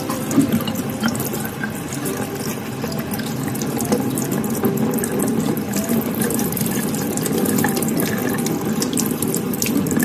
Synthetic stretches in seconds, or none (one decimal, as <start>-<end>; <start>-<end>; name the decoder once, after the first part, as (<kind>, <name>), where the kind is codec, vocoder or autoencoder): 0.0-1.3 (vocoder, BigVGAN v2); 5.2-8.2; 9.2-10.0